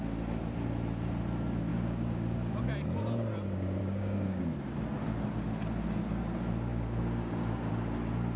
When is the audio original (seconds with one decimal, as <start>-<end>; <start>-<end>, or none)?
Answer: 0.0-1.7; 2.6-3.8; 4.4-6.7; 7.7-8.4